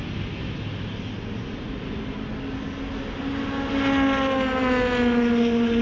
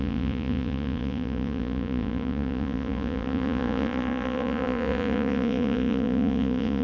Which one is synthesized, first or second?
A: second